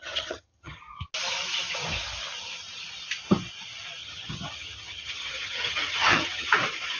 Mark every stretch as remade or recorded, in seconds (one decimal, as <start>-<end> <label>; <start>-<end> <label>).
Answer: 0.0-0.8 remade; 0.8-4.0 recorded; 4.0-6.5 remade; 6.5-7.0 recorded